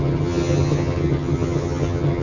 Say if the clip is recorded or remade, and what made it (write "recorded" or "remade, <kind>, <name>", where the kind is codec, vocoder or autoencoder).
remade, vocoder, HiFi-GAN